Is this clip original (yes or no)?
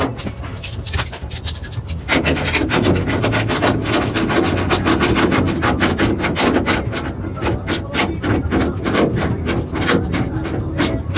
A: yes